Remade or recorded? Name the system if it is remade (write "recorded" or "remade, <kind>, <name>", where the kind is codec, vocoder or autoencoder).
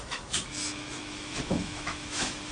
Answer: remade, autoencoder, DAC-VAE